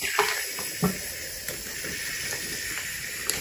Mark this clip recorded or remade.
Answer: recorded